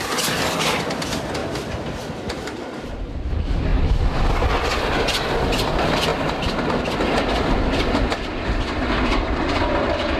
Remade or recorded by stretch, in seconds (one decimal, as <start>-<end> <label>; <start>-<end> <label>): 0.0-10.2 recorded

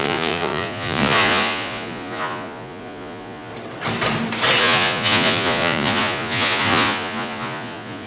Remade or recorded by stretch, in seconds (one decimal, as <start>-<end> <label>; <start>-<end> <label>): 0.0-3.5 remade; 3.5-4.6 recorded; 4.6-8.1 remade

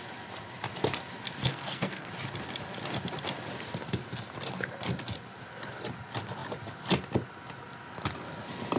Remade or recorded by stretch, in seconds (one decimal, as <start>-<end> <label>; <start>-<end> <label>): 0.0-1.4 recorded; 1.4-2.1 remade; 2.1-8.8 recorded

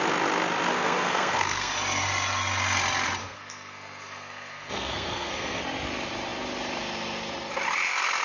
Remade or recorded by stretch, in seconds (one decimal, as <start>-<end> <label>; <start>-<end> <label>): 0.0-0.7 recorded; 0.7-1.7 remade; 1.7-3.2 recorded; 3.2-5.6 remade; 5.6-8.2 recorded

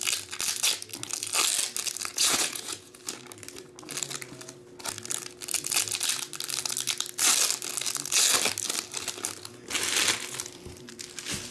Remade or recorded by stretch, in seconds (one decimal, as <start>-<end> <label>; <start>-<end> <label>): 0.0-2.1 recorded; 2.1-3.0 remade; 3.0-11.5 recorded

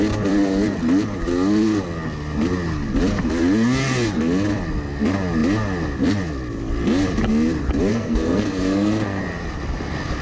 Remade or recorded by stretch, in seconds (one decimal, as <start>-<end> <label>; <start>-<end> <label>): 0.0-7.9 recorded; 7.9-9.2 remade; 9.2-10.2 recorded

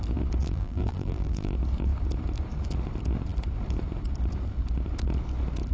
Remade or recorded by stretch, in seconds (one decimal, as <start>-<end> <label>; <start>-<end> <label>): 0.0-0.4 recorded; 0.4-1.5 remade; 1.5-5.7 recorded

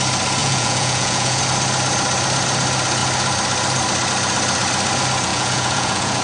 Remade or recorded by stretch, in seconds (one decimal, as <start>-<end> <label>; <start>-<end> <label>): 0.0-0.4 recorded; 0.4-1.4 remade; 1.4-5.3 recorded; 5.3-6.2 remade